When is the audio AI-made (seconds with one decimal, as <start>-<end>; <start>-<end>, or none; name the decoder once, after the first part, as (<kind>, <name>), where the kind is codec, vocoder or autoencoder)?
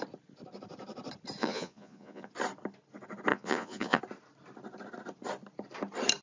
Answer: 1.4-2.3 (vocoder, Vocos); 3.3-4.0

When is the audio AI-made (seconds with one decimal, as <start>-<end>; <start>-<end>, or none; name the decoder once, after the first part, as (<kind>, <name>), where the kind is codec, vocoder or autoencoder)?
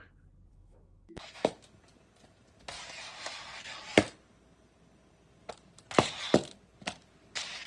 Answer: 0.5-1.5 (autoencoder, DAC-VAE)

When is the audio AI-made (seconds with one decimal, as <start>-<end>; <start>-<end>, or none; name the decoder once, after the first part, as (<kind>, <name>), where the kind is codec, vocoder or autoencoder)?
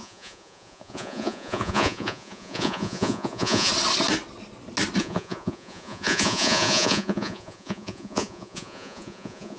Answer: 0.0-3.7 (vocoder, Vocos); 5.0-9.6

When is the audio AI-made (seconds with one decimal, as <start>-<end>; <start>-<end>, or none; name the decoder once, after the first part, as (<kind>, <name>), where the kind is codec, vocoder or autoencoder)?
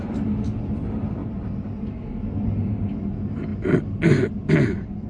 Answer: none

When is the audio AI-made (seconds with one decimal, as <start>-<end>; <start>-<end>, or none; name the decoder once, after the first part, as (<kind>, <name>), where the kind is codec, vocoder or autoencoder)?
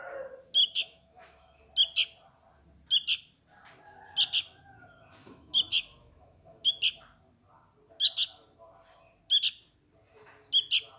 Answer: 0.6-1.6 (autoencoder, DAC-VAE); 5.2-6.7